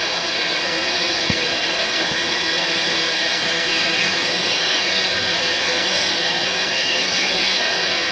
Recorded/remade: remade